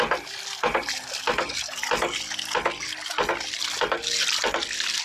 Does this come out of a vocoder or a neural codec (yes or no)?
no